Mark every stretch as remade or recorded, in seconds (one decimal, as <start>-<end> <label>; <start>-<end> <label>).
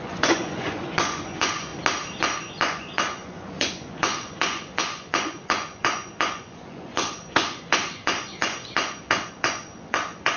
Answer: 0.0-1.7 remade; 1.7-2.2 recorded; 2.2-10.4 remade